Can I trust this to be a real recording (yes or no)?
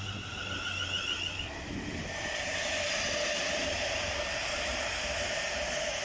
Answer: yes